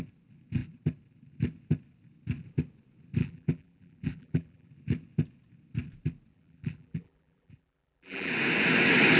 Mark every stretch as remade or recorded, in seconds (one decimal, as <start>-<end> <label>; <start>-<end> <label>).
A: 0.0-3.2 recorded; 3.2-4.7 remade; 4.7-6.3 recorded; 6.3-8.3 remade; 8.3-9.2 recorded